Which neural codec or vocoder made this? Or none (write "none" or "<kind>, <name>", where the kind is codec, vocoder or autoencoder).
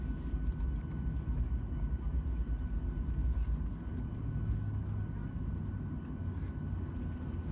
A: none